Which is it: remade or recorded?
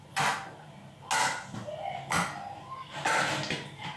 recorded